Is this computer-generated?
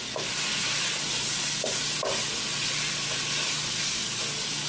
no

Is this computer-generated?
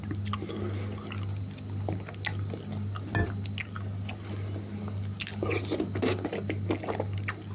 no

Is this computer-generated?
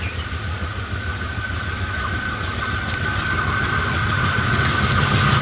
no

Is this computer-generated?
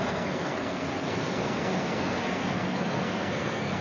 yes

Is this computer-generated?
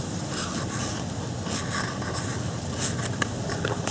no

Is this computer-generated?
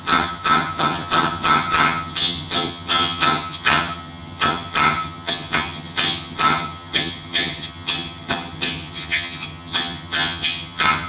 yes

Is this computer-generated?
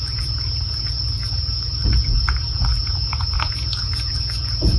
yes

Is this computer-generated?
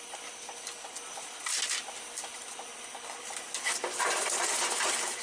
no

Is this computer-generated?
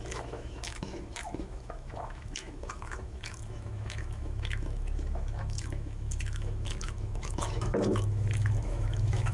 yes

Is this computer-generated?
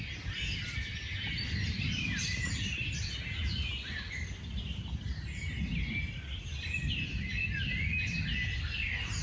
no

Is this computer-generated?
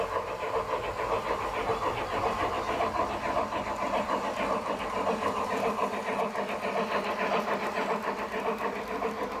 no